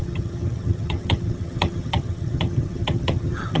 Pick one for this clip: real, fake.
fake